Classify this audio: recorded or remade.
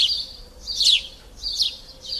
recorded